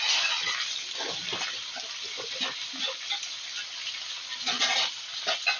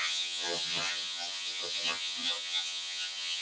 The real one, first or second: first